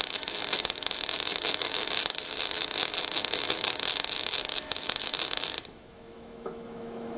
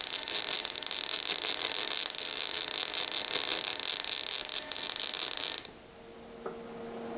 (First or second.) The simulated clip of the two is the first